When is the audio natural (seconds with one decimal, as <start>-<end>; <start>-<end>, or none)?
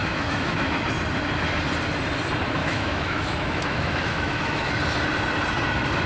0.8-2.6; 4.7-6.1